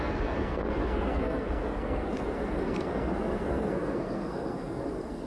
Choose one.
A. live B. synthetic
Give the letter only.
B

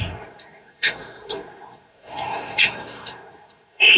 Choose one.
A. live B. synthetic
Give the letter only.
B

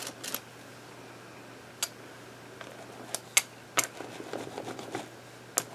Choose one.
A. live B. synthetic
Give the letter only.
A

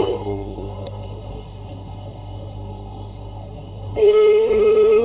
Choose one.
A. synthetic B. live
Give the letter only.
A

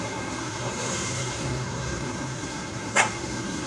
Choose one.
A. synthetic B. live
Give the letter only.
A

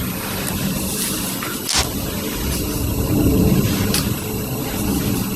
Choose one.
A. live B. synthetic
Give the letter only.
A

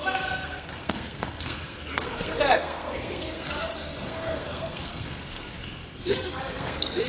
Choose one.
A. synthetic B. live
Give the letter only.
A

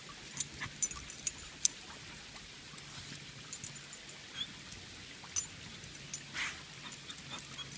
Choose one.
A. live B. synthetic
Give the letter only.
A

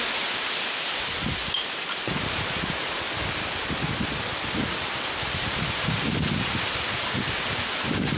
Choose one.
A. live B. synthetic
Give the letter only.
A